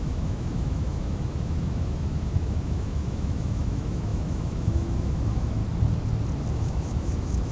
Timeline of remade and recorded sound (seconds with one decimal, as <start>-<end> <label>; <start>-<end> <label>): 0.0-5.6 remade; 5.6-6.5 recorded; 6.5-7.5 remade